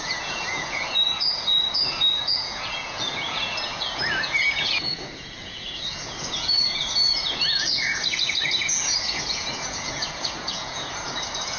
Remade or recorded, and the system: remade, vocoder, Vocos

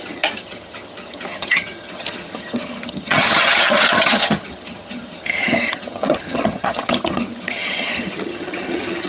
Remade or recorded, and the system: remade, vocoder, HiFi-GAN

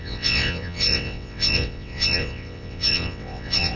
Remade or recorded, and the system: remade, vocoder, WaveNeXt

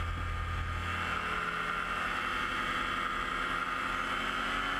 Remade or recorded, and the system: recorded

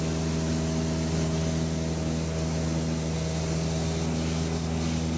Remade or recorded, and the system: recorded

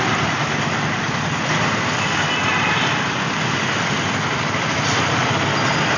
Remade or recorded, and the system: remade, vocoder, BigVGAN v2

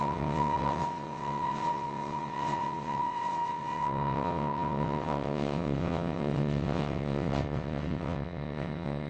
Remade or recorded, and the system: remade, vocoder, WaveNeXt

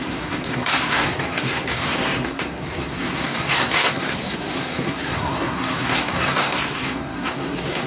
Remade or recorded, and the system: remade, codec, SNAC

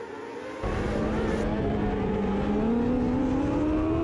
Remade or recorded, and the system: recorded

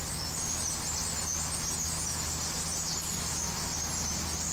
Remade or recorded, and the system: recorded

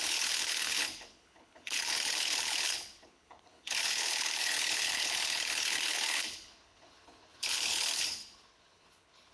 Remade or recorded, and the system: remade, codec, HILCodec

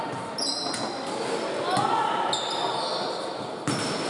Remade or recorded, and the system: recorded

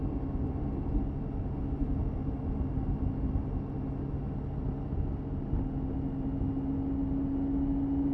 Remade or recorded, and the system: recorded